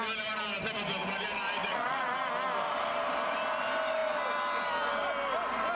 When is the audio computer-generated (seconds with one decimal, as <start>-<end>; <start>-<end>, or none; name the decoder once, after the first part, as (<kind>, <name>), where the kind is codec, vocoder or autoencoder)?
1.6-2.3 (vocoder, Vocos)